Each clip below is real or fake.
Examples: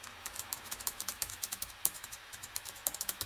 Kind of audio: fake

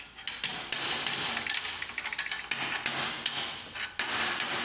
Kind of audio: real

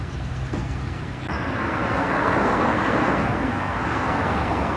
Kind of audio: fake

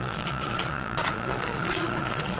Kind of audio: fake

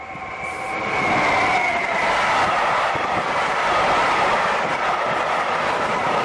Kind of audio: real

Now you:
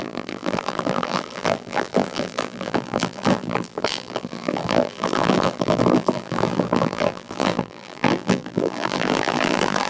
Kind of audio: fake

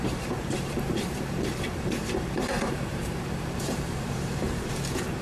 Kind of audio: fake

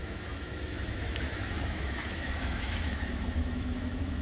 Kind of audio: fake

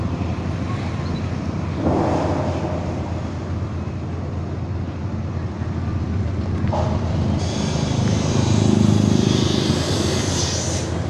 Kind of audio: real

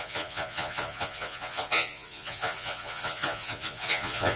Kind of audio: fake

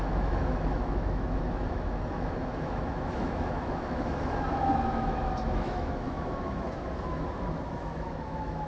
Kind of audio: fake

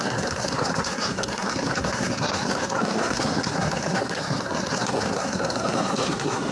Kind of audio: fake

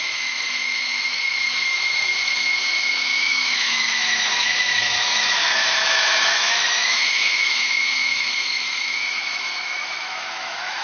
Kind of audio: fake